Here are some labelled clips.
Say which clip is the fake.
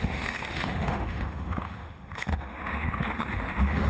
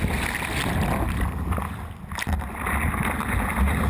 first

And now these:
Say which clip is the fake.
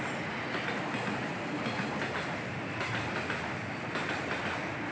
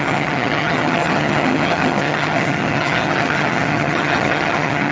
second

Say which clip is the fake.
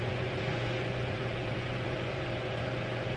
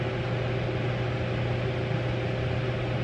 first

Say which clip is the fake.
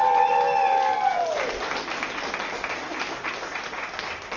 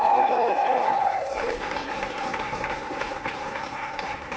second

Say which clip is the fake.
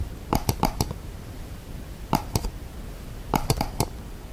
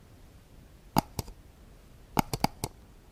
first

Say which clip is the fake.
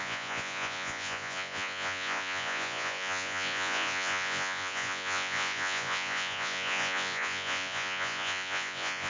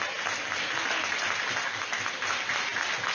first